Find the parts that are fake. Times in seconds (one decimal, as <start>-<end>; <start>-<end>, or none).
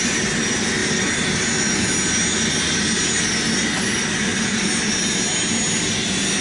none